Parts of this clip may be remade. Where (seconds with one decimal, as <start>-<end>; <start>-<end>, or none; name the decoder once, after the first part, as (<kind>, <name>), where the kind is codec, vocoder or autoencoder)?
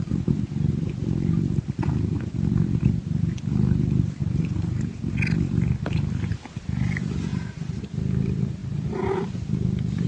7.3-7.8 (vocoder, BigVGAN v2); 8.6-10.1